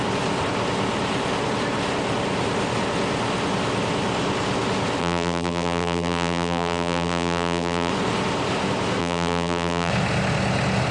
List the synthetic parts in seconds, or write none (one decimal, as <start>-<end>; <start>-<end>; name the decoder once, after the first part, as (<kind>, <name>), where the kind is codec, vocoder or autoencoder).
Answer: 5.0-7.9 (vocoder, BigVGAN v2); 9.0-9.9